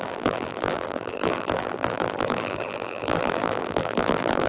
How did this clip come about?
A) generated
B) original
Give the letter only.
A